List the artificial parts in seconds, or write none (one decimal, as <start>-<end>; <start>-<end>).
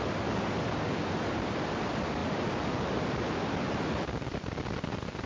none